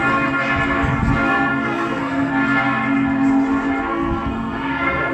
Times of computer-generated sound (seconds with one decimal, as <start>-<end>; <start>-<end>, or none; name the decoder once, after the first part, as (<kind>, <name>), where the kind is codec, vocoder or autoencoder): 1.3-2.3 (codec, SNAC); 3.9-5.1